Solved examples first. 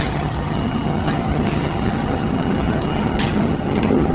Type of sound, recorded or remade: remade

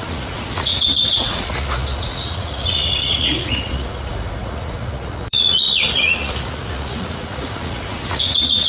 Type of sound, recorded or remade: remade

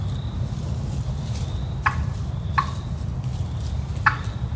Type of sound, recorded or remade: recorded